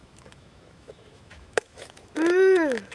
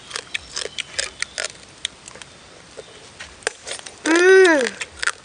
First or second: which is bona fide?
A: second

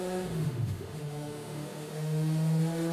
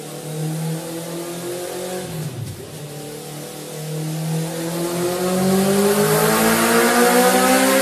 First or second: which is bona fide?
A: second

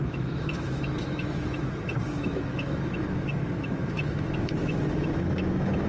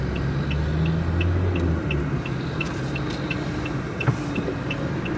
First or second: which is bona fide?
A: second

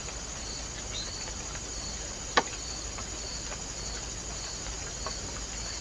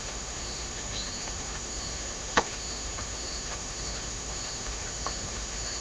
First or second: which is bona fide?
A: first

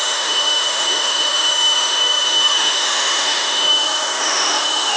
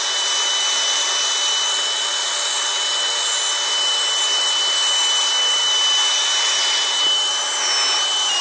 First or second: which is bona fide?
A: second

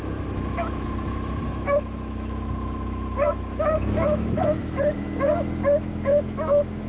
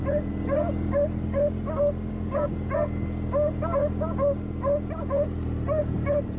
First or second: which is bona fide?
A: second